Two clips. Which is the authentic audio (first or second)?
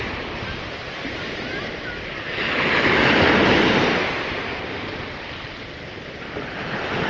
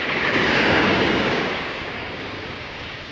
first